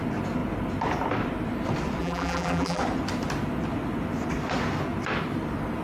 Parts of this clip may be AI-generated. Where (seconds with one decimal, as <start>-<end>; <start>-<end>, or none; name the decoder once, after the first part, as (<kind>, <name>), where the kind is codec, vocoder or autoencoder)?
2.0-2.8 (vocoder, BigVGAN v2)